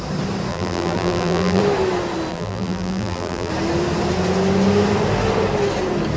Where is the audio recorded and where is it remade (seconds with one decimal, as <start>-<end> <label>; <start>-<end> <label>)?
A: 0.0-0.5 recorded; 0.5-1.6 remade; 1.6-2.3 recorded; 2.3-3.5 remade; 3.5-6.2 recorded